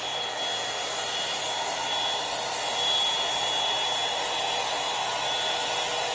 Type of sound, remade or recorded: recorded